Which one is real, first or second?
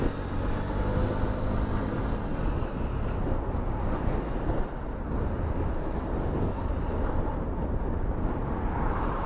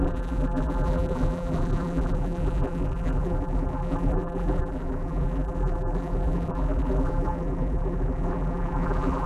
first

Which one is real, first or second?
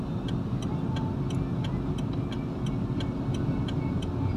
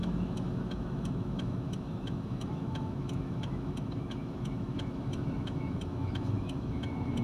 first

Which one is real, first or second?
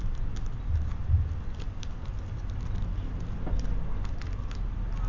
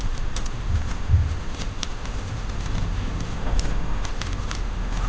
first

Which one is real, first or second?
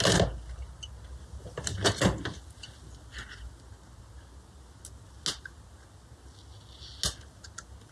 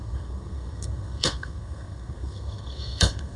first